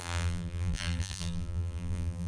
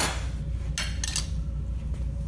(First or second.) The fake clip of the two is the first